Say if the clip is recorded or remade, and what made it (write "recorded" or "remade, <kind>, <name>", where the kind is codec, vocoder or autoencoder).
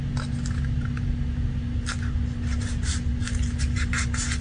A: recorded